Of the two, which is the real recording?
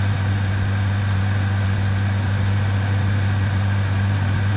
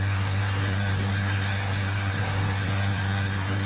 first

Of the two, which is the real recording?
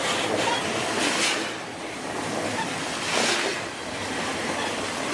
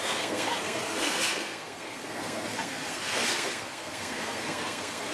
first